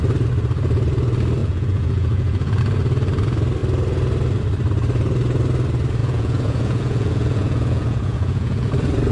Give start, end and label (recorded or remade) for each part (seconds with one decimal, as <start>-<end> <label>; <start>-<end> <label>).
0.0-1.4 recorded; 1.4-2.6 remade; 2.6-6.0 recorded; 6.0-8.7 remade; 8.7-9.1 recorded